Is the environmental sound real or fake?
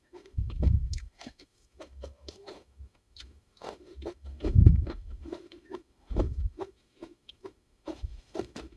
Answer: fake